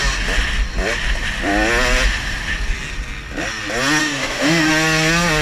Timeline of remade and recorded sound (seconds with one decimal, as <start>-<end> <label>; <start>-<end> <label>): 0.0-4.0 recorded; 4.0-4.7 remade; 4.7-5.4 recorded